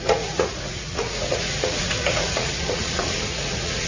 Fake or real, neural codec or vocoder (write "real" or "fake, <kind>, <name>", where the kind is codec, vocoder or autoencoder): fake, vocoder, Vocos